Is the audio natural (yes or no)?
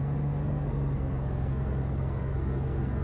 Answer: no